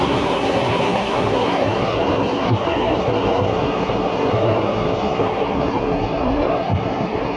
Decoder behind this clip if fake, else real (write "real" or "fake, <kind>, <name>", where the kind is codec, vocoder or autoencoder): fake, codec, SNAC